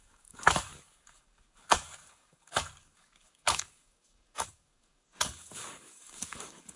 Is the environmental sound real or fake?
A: fake